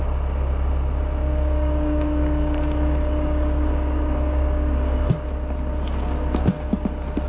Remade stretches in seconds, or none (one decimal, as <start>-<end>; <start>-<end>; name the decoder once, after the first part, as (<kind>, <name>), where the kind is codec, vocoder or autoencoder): 1.2-5.1 (codec, DAC)

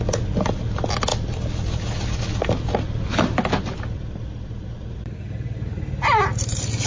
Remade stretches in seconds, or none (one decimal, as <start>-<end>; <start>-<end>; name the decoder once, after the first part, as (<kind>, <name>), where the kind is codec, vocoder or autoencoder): none

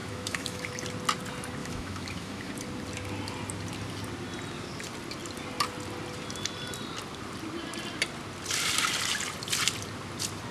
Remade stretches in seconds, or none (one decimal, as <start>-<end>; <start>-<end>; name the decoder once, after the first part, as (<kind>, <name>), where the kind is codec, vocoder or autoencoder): 0.0-0.7 (autoencoder, DAC-VAE); 1.6-2.5

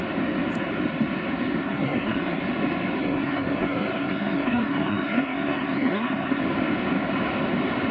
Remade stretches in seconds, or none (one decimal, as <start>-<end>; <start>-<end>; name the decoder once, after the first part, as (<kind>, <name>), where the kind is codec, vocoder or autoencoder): 1.6-2.4 (codec, SNAC); 3.0-6.4